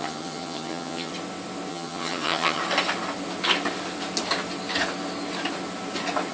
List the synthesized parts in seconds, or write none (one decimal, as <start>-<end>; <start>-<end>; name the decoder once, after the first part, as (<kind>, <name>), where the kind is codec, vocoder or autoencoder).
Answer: 0.0-1.1 (vocoder, HiFi-GAN); 1.7-2.6